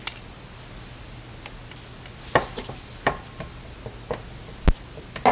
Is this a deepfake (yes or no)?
no